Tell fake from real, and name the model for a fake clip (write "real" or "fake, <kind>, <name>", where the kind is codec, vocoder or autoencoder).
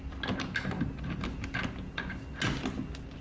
real